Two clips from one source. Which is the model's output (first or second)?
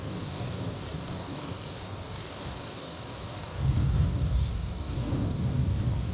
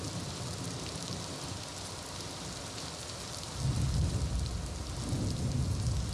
first